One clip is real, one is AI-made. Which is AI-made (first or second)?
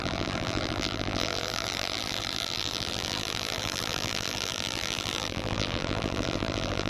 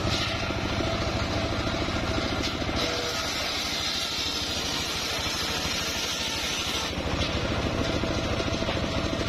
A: first